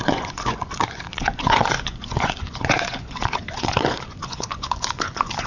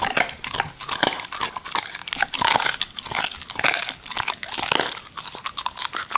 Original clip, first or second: second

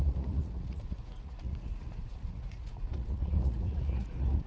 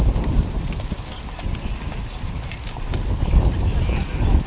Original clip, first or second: second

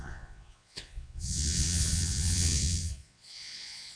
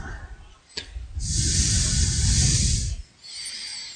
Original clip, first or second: second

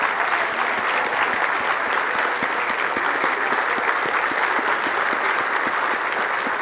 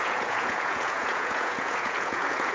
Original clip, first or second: first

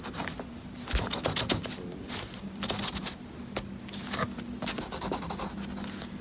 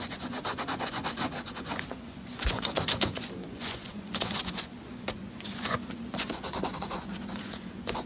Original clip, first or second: first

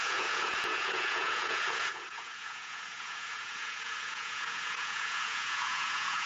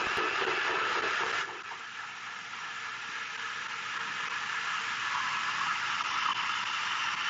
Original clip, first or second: second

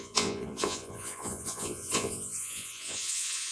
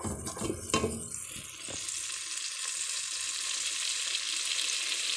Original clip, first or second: second